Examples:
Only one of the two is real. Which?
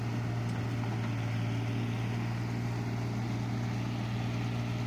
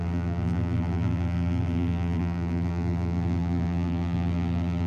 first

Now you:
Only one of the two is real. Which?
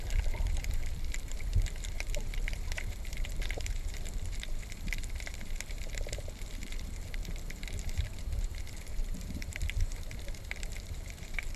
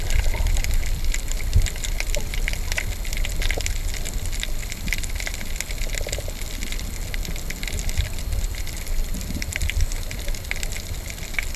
second